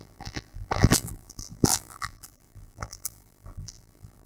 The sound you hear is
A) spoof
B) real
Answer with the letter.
A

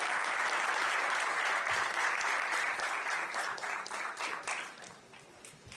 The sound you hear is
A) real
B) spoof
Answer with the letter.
B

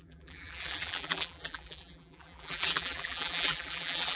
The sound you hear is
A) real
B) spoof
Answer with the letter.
B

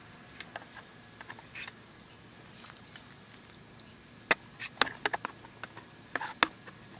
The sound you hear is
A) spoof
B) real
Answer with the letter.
B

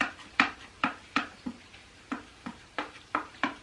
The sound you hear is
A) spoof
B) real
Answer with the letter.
A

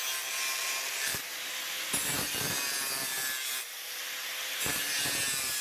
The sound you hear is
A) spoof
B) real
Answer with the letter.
B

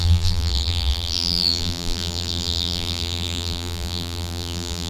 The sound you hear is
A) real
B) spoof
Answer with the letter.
B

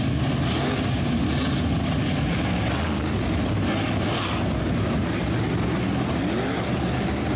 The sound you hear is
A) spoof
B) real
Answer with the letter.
B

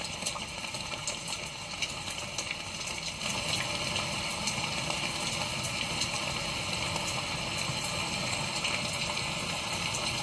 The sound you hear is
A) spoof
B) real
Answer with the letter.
B